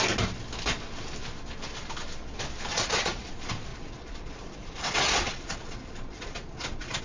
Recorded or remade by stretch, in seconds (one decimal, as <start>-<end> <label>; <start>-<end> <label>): 0.0-2.7 recorded; 2.7-3.3 remade; 3.3-3.7 recorded; 3.7-7.0 remade